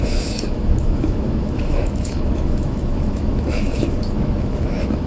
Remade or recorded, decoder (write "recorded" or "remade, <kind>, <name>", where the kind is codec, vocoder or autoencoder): remade, autoencoder, DAC-VAE